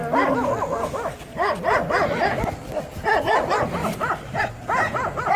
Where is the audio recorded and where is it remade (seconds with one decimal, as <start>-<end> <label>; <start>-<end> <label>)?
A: 0.0-3.2 recorded; 3.2-3.8 remade; 3.8-4.4 recorded; 4.4-5.4 remade